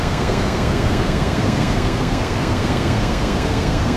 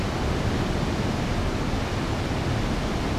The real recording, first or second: second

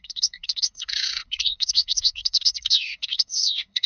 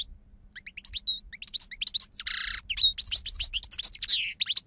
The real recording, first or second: second